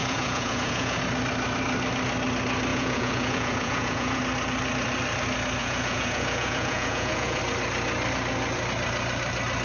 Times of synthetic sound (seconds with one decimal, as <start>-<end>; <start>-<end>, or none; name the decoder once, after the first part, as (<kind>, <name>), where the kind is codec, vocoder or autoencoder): 0.0-1.0 (vocoder, Vocos); 2.7-4.2; 5.6-7.4